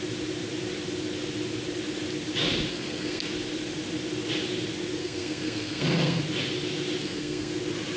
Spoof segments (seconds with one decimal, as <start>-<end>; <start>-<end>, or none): 2.7-3.2; 5.0-6.2; 7.0-7.5